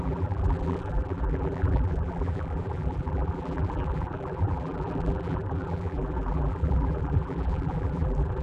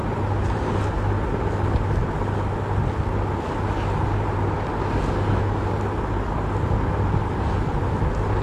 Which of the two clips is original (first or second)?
second